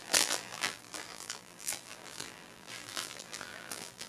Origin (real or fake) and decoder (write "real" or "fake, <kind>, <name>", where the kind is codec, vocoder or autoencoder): fake, vocoder, BigVGAN v2